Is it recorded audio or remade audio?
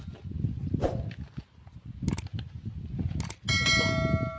recorded